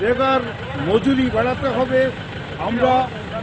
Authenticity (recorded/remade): recorded